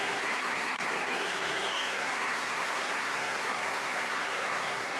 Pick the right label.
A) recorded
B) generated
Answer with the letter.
B